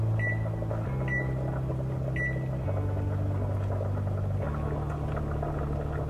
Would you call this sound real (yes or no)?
yes